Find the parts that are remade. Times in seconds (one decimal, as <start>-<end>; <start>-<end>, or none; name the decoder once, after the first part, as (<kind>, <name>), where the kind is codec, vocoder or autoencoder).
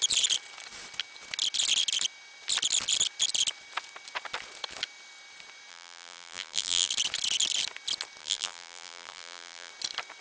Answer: 5.7-6.9 (vocoder, BigVGAN v2); 8.2-9.7